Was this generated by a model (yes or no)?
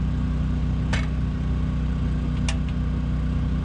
no